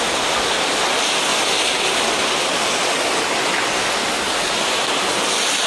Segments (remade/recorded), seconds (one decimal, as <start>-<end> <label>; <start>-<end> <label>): 0.0-5.7 recorded